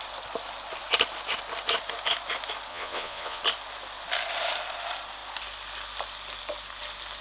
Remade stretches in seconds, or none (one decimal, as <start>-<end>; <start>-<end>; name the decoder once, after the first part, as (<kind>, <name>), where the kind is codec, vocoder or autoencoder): 2.7-3.4 (vocoder, Vocos)